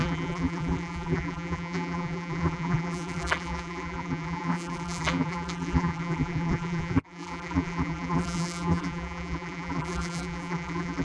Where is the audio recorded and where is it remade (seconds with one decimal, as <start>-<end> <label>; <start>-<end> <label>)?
0.0-11.0 remade